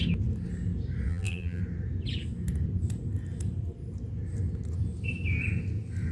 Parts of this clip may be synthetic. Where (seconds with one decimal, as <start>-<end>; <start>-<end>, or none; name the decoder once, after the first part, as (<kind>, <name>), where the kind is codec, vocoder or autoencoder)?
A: 1.1-1.6 (vocoder, BigVGAN v2)